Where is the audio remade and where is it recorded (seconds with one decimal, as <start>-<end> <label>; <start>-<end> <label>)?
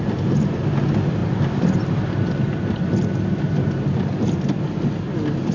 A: 0.0-5.5 recorded